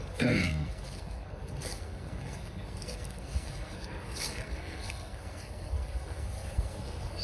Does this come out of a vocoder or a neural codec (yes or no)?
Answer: yes